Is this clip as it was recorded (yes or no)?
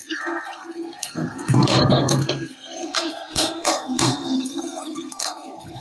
no